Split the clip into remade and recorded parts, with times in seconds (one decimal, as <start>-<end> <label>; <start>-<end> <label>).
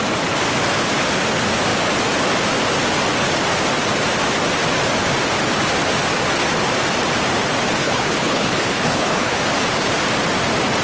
0.0-7.8 recorded; 7.8-9.4 remade; 9.4-10.8 recorded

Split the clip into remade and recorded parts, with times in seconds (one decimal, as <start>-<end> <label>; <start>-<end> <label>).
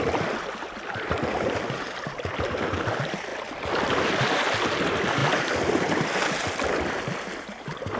0.0-8.0 recorded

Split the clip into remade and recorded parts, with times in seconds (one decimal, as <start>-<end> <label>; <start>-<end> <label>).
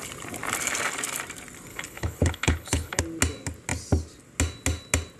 0.0-1.7 recorded; 1.7-3.0 remade; 3.0-5.2 recorded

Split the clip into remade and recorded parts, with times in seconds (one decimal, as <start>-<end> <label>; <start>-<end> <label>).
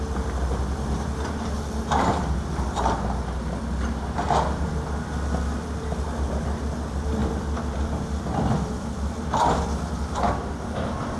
0.0-11.2 recorded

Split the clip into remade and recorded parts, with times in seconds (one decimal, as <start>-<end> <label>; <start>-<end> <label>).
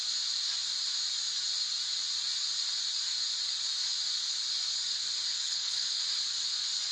0.0-5.3 recorded; 5.3-6.0 remade; 6.0-6.9 recorded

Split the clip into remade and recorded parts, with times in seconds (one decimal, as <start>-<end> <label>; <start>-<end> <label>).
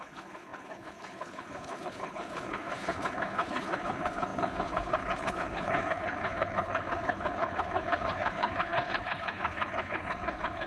0.0-10.7 remade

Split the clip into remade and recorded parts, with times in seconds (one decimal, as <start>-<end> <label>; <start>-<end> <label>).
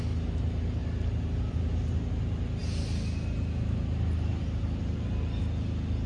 0.0-6.1 recorded